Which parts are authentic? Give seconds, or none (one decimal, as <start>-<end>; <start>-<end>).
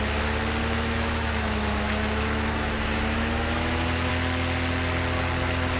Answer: 0.0-0.6; 4.1-5.8